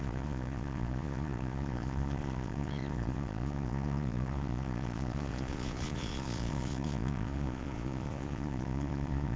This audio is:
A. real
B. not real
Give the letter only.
B